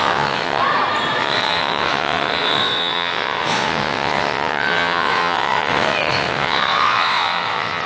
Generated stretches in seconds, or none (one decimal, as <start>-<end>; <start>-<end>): 0.0-0.6; 1.2-7.9